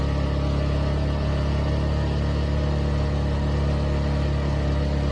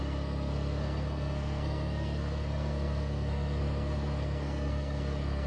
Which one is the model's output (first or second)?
second